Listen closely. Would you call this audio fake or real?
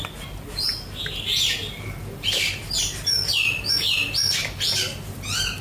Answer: fake